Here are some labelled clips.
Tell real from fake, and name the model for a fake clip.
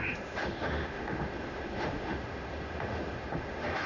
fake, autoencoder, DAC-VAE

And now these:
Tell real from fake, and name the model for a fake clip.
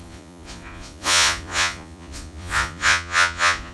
fake, vocoder, Vocos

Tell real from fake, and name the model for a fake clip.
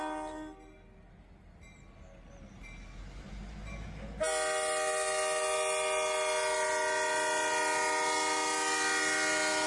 real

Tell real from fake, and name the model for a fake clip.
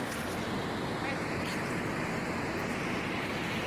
real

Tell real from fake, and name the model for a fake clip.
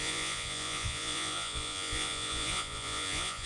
fake, vocoder, Vocos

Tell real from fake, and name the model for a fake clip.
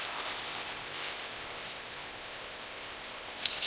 fake, codec, ZipCodec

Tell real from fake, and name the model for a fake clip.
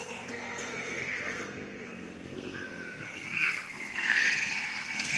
fake, codec, SNAC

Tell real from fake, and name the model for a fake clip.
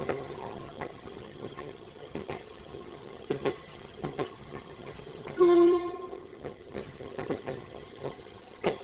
fake, vocoder, HiFi-GAN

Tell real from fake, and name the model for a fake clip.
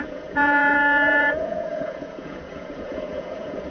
fake, vocoder, Vocos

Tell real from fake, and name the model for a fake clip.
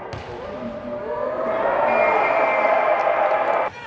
real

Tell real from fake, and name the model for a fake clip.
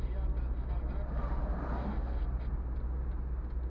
real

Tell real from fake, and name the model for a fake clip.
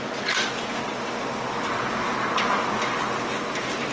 real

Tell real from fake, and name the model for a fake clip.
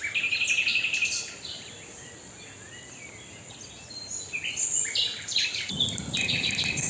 real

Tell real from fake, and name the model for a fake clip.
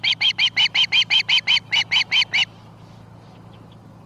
real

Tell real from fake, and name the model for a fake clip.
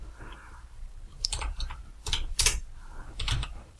fake, vocoder, BigVGAN v2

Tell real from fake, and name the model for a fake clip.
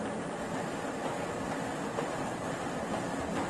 real